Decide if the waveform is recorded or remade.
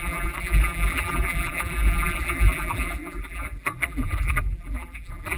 remade